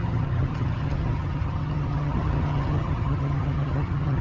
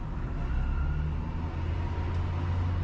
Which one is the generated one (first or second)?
first